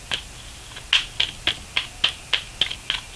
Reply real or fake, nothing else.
real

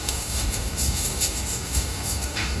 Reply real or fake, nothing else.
fake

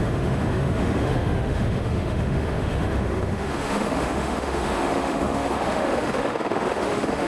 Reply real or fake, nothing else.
fake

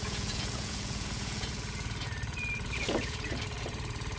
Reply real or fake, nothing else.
fake